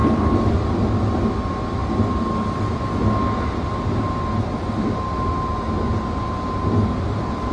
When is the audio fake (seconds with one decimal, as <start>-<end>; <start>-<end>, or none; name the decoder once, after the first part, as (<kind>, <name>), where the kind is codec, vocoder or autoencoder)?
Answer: none